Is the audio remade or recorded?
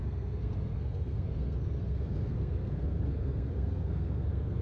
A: remade